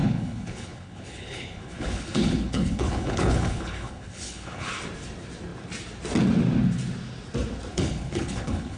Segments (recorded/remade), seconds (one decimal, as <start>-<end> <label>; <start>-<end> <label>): 0.0-4.7 remade; 4.7-7.7 recorded; 7.7-8.8 remade